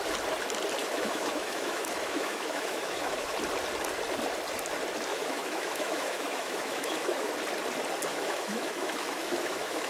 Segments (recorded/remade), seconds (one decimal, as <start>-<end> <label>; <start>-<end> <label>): 0.0-0.8 recorded; 0.8-3.3 remade; 3.3-5.1 recorded; 5.1-7.3 remade; 7.3-8.1 recorded; 8.1-9.9 remade